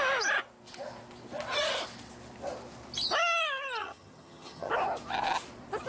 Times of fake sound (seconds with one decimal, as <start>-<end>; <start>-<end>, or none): 3.8-4.7